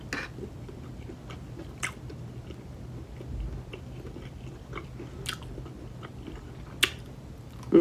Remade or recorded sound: recorded